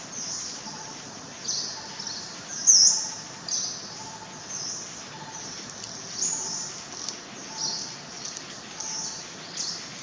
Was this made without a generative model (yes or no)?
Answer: yes